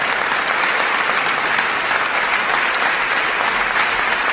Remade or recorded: recorded